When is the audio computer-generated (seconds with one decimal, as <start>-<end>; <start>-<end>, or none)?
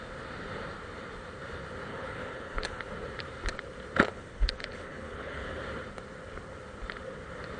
1.9-2.8; 4.1-5.6